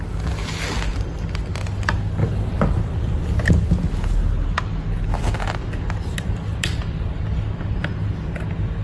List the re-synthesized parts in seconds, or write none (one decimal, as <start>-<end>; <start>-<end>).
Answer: 0.9-1.4; 2.2-3.5; 5.6-8.8